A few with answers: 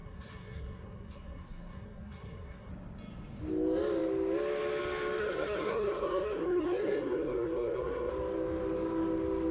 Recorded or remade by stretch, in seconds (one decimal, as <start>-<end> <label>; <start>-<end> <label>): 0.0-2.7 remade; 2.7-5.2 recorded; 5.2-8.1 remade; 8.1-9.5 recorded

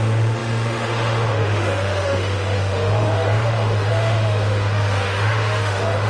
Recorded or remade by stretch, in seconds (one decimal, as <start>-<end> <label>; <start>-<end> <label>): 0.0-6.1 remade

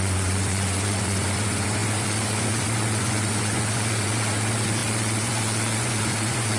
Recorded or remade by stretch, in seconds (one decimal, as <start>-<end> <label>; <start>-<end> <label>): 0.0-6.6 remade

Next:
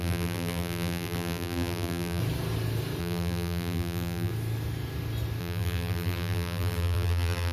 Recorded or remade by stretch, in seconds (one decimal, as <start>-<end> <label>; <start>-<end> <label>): 0.0-2.2 remade; 2.2-3.0 recorded; 3.0-4.3 remade; 4.3-5.4 recorded; 5.4-7.5 remade

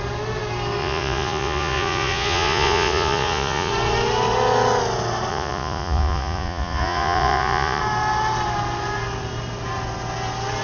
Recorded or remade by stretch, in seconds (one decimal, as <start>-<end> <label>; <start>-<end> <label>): 0.0-0.8 recorded; 0.8-3.7 remade; 3.7-5.3 recorded; 5.3-7.8 remade; 7.8-10.6 recorded